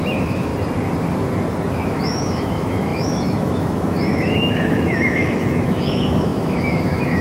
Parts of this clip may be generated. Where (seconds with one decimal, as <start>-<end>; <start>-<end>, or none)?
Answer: 0.0-0.5; 1.7-7.2